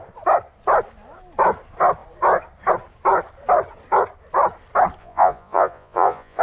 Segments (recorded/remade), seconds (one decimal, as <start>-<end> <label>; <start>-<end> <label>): 0.0-5.0 recorded; 5.0-6.4 remade